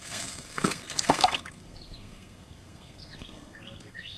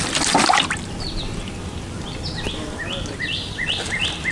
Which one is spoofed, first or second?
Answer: first